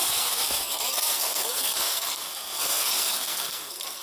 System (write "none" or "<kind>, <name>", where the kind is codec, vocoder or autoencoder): codec, SNAC